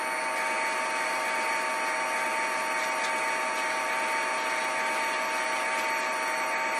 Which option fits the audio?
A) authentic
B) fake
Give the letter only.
A